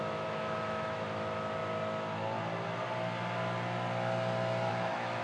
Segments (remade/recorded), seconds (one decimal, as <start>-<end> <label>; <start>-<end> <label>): 0.0-1.6 remade; 1.6-4.7 recorded; 4.7-5.2 remade